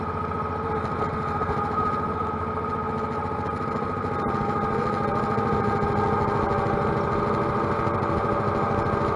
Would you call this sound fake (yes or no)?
no